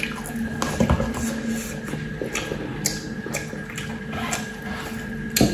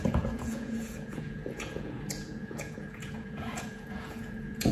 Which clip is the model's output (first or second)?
second